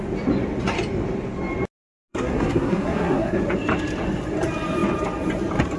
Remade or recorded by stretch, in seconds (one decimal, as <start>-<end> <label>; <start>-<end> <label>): 0.0-2.1 recorded; 2.1-3.4 remade; 3.4-5.8 recorded